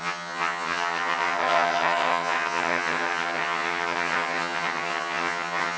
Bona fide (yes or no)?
no